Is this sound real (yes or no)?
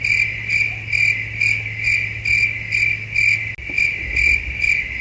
yes